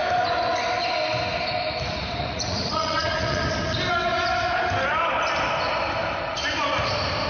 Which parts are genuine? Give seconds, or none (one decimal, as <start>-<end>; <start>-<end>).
0.0-2.2; 3.4-7.3

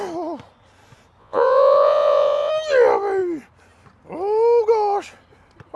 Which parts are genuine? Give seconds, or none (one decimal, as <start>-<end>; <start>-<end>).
0.0-1.2; 2.5-5.8

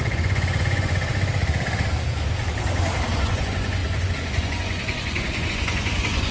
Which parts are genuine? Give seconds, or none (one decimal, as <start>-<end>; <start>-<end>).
1.1-3.1

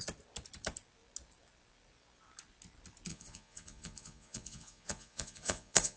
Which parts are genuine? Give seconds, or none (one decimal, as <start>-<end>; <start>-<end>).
0.0-3.1

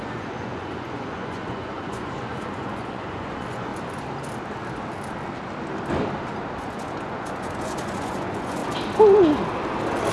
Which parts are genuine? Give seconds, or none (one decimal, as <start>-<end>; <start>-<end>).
3.7-6.6; 8.6-10.1

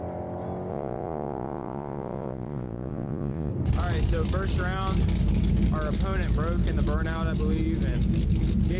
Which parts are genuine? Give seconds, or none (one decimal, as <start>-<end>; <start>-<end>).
0.0-0.7; 3.5-8.8